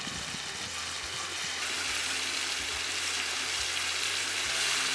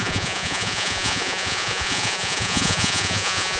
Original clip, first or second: first